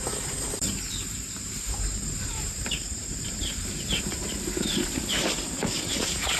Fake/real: fake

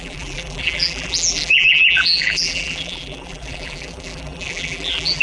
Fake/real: fake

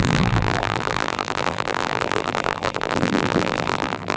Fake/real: fake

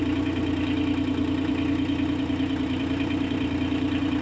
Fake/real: fake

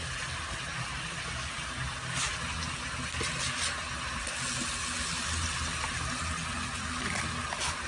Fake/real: real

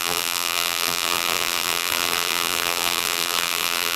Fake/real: fake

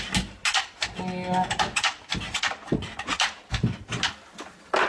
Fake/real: real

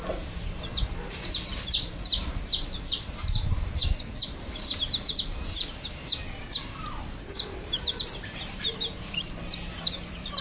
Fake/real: fake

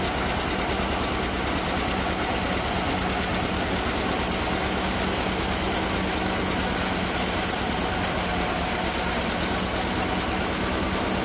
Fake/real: real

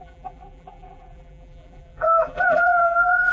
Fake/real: fake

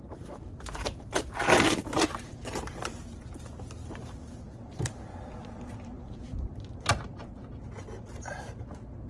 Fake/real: fake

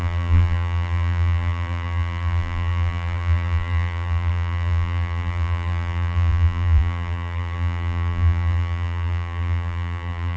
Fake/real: fake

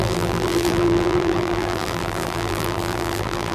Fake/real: fake